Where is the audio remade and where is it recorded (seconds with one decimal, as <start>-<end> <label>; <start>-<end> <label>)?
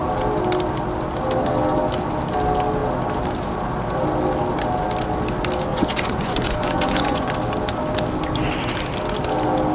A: 0.0-5.7 recorded; 5.7-7.3 remade; 7.3-9.7 recorded